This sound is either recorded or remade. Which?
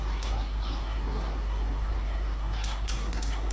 remade